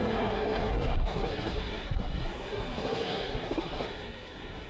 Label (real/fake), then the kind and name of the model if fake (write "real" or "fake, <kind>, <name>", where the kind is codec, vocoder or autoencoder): fake, codec, SNAC